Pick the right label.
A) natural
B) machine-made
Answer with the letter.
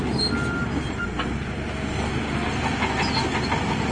A